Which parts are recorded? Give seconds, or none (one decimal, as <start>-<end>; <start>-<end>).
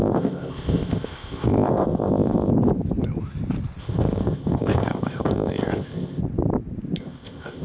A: 2.5-3.8; 6.2-7.0